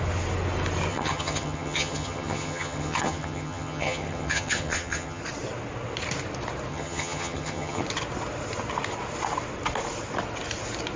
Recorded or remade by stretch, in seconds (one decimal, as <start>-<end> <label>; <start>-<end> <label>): 0.0-0.9 recorded; 0.9-5.2 remade; 5.2-6.7 recorded; 6.7-7.8 remade; 7.8-11.0 recorded